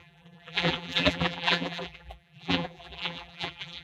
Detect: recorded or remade remade